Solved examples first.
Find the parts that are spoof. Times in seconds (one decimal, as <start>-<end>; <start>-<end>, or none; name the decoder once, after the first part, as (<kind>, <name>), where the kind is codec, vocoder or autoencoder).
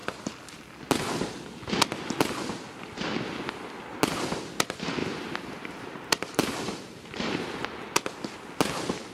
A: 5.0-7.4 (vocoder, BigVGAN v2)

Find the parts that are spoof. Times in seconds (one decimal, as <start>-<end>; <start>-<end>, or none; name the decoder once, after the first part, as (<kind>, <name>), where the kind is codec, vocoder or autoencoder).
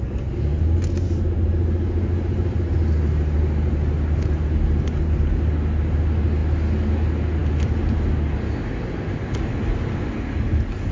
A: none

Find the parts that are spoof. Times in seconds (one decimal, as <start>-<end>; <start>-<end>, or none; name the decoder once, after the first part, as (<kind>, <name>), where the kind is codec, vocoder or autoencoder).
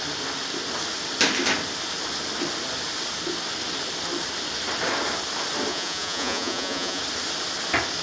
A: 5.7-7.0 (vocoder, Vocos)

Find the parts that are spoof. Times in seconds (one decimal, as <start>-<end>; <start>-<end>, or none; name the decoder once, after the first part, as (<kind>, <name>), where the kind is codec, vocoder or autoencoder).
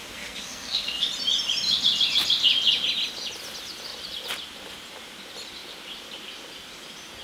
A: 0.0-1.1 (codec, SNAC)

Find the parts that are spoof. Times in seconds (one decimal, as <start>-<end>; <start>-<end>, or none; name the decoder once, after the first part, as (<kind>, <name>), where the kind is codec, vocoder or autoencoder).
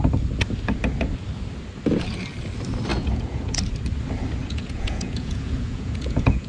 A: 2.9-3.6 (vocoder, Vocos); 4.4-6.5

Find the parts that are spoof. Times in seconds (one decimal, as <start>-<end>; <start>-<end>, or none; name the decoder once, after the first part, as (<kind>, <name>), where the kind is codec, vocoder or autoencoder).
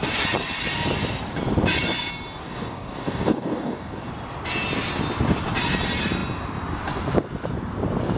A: 2.4-4.1 (codec, DAC)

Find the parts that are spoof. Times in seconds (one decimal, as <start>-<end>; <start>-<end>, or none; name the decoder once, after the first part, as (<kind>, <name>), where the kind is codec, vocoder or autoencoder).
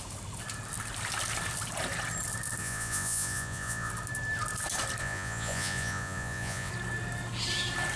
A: 2.6-3.9 (vocoder, Vocos); 5.0-6.7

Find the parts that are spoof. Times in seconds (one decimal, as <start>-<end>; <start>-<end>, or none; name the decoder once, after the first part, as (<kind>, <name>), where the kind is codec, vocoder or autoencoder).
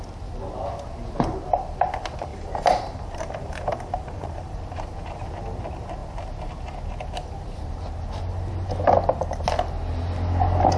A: 2.3-4.6 (vocoder, BigVGAN v2)